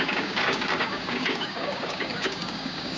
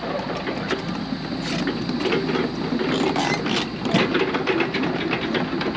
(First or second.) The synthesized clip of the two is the first